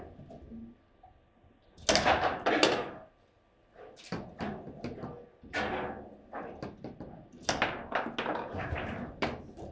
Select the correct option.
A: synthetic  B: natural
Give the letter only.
B